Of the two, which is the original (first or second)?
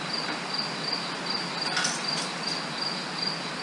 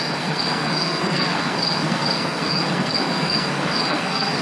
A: first